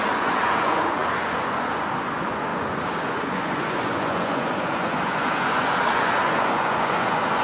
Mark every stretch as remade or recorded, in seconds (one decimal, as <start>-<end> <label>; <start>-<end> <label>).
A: 0.0-7.4 remade